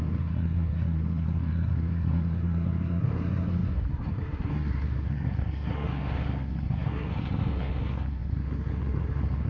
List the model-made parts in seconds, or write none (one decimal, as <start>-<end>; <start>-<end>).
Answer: 0.0-9.5